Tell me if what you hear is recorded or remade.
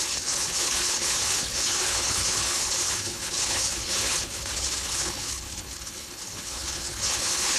remade